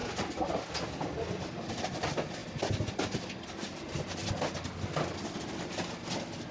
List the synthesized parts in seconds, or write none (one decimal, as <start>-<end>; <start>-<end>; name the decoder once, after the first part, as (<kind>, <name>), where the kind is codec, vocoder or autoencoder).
none